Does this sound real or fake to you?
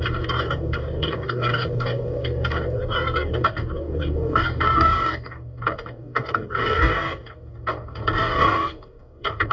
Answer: fake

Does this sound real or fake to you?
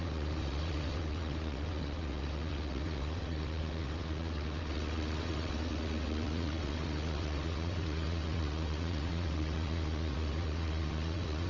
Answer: fake